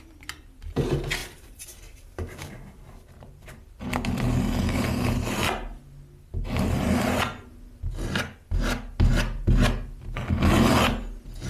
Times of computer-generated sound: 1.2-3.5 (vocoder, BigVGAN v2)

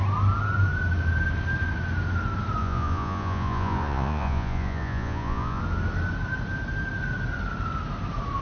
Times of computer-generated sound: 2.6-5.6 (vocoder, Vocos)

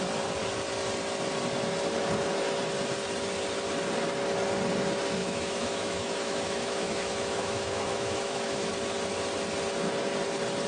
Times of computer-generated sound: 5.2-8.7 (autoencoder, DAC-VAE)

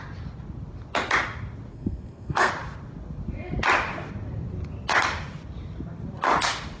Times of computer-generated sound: 1.7-2.5 (codec, SNAC)

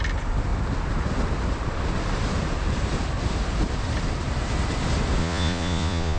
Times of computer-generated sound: 5.2-6.2 (vocoder, Vocos)

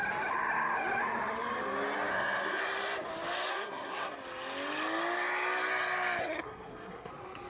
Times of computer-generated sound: 2.1-2.6 (codec, SNAC); 3.5-4.1; 6.2-7.1

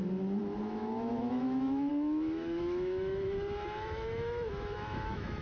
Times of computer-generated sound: 0.6-5.4 (autoencoder, DAC-VAE)